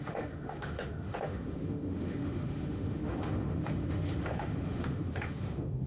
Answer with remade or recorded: remade